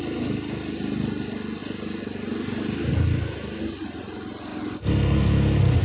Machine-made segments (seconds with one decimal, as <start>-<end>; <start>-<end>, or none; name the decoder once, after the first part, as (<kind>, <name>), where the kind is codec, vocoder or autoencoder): none

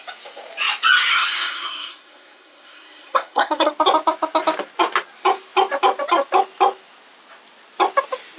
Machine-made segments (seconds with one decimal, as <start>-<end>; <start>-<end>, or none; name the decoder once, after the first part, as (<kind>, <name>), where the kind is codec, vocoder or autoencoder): 1.1-3.7 (codec, SNAC)